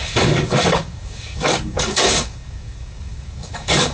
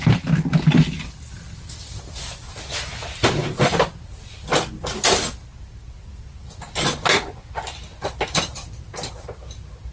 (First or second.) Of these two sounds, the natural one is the second